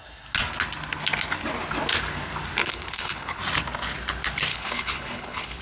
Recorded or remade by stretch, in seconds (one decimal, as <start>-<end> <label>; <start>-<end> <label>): 0.0-2.6 recorded; 2.6-3.4 remade; 3.4-4.5 recorded; 4.5-5.6 remade